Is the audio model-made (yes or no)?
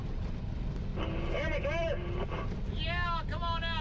no